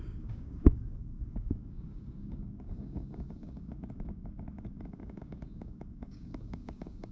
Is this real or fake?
fake